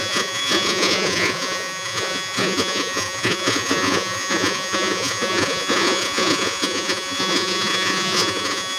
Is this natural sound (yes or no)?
no